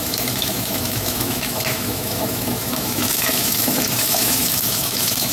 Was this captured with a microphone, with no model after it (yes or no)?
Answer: no